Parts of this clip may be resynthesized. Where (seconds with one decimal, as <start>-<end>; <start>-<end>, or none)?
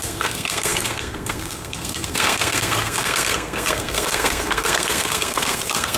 0.0-6.0